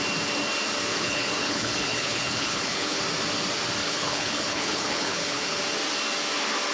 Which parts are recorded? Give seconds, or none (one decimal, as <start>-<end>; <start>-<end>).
0.0-0.9; 3.0-3.8; 5.6-6.7

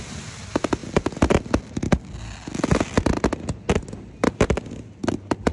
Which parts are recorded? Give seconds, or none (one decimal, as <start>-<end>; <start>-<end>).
0.0-5.5

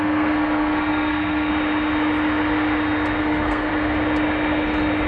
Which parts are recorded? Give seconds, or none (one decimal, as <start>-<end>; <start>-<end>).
1.5-3.2; 3.7-5.1